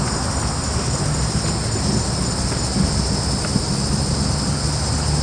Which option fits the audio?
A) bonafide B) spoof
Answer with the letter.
A